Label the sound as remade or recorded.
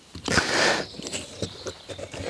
recorded